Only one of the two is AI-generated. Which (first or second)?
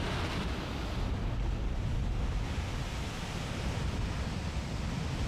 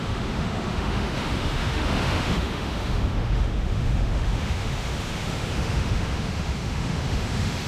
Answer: second